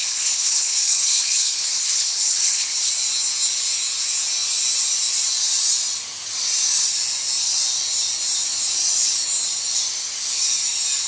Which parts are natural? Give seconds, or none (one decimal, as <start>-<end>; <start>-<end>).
2.9-11.1